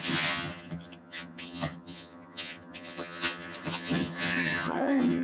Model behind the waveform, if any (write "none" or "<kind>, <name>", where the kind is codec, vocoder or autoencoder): vocoder, HiFi-GAN